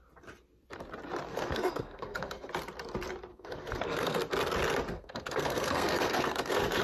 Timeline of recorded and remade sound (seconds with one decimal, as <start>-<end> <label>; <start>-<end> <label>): 0.0-1.3 recorded; 1.3-2.5 remade; 2.5-3.3 recorded; 3.3-4.2 remade; 4.2-4.9 recorded; 4.9-6.8 remade